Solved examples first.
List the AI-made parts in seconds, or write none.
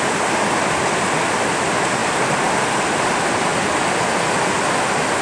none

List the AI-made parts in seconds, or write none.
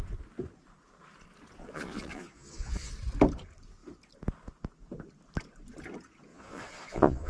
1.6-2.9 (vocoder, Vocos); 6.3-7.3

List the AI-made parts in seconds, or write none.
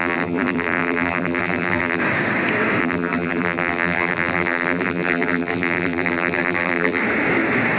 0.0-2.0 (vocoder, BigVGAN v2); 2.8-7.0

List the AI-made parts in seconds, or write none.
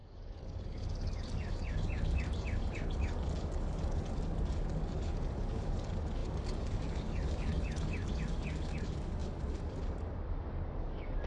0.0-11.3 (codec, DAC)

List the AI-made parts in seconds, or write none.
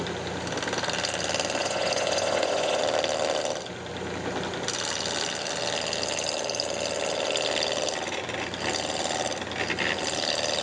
1.6-2.8 (vocoder, Vocos)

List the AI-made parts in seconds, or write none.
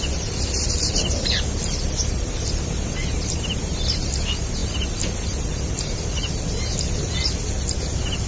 none